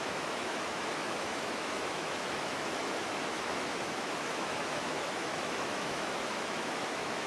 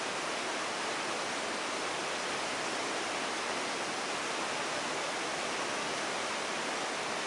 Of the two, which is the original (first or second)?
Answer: second